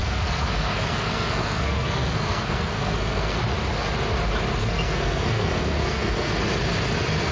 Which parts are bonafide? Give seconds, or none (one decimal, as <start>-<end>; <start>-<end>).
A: 3.4-4.6; 6.3-7.3